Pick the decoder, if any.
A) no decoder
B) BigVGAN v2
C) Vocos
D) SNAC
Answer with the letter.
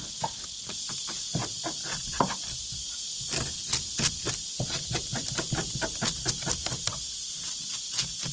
A